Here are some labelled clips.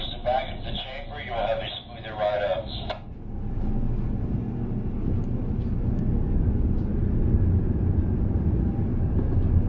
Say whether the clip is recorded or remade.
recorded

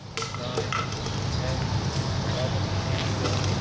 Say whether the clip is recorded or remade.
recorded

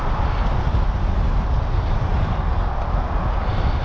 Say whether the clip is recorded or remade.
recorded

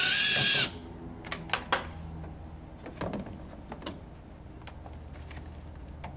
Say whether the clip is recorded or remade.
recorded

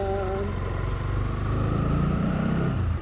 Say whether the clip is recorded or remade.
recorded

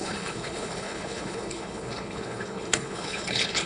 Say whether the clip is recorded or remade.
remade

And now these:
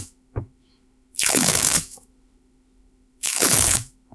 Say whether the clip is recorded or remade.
remade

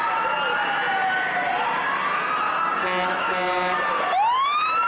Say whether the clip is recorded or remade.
recorded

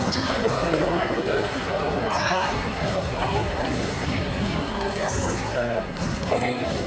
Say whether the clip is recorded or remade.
remade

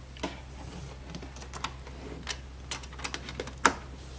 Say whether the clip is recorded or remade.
recorded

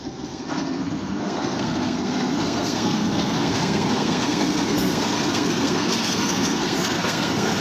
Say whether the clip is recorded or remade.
remade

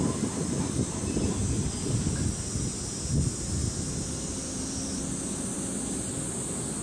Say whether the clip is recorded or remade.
recorded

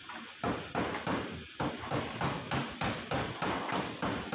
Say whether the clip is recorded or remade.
recorded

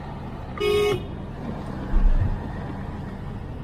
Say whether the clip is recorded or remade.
recorded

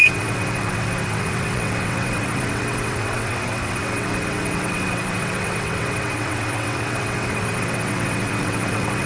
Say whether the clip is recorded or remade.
remade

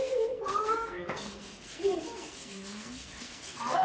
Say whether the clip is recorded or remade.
remade